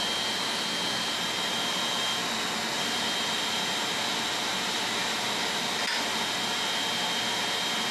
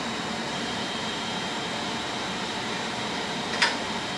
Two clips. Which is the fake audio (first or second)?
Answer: second